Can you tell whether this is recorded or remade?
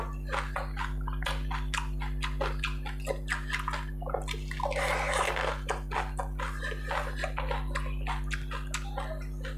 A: recorded